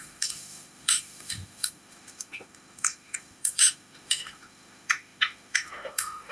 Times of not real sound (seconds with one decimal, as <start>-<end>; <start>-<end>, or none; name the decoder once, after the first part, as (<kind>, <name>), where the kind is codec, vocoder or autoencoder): 0.0-6.3 (autoencoder, DAC-VAE)